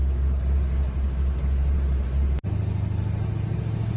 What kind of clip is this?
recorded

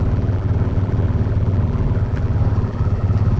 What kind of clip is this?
remade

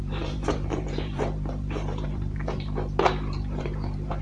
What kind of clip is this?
remade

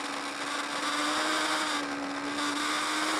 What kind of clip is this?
recorded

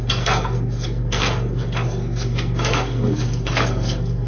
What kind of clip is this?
remade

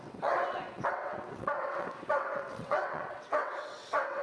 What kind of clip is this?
remade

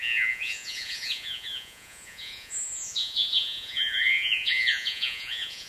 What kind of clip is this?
remade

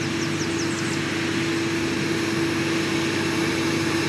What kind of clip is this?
recorded